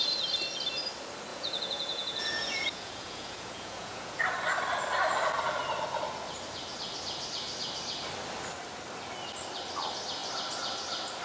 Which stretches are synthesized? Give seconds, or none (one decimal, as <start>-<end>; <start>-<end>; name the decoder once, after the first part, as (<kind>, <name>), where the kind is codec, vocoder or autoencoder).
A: 1.3-4.2 (vocoder, Vocos)